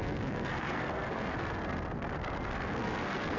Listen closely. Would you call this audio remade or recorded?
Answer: remade